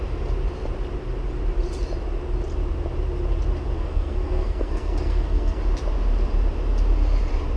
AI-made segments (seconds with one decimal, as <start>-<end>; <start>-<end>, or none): 3.8-5.6